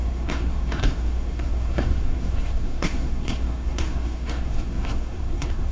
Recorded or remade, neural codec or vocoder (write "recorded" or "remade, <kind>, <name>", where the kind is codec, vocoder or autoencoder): remade, codec, SNAC